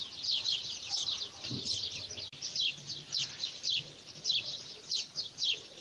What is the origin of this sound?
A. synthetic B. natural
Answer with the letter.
B